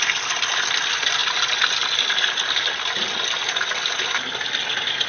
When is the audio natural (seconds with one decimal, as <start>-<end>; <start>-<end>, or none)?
0.0-5.1